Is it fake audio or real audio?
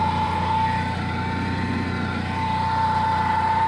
real